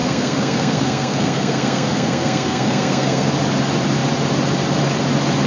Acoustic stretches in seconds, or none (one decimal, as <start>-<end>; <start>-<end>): 3.3-5.5